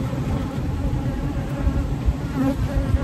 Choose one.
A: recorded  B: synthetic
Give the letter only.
B